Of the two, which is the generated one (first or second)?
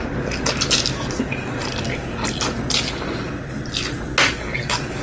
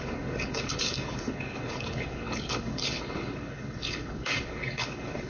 second